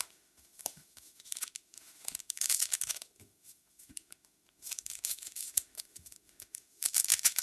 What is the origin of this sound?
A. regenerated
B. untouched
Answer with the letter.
A